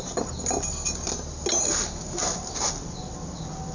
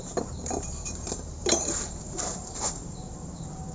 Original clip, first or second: first